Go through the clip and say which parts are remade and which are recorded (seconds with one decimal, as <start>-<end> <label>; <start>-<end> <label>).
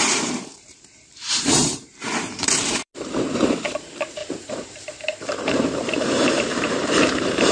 0.0-2.9 remade; 2.9-3.7 recorded; 3.7-7.5 remade